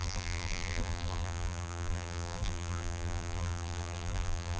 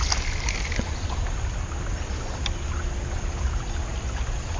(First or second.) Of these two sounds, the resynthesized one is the first